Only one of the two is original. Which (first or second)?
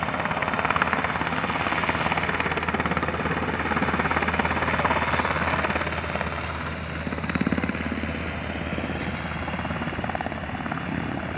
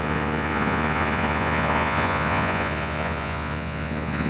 first